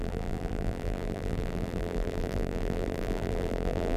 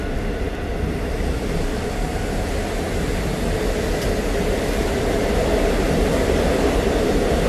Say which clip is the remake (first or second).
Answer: first